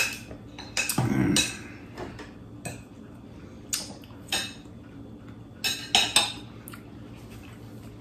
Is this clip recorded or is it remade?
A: recorded